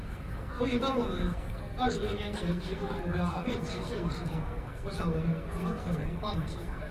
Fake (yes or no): yes